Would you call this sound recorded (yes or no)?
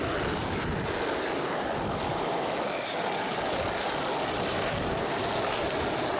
yes